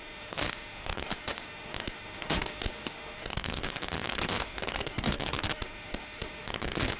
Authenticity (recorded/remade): remade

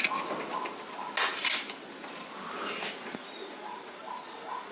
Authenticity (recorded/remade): recorded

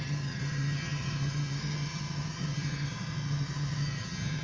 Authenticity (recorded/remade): remade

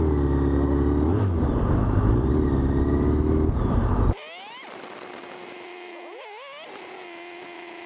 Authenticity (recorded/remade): recorded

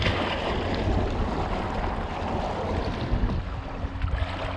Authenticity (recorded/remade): recorded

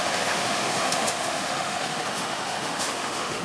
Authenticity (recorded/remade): remade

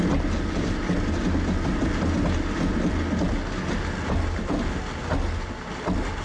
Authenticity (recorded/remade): recorded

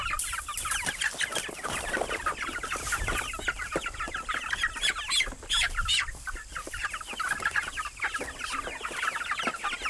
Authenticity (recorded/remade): recorded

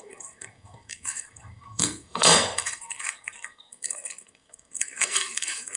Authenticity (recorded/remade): remade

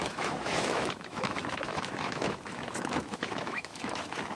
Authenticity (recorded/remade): remade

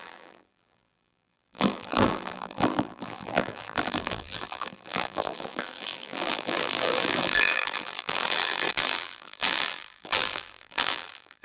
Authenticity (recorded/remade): remade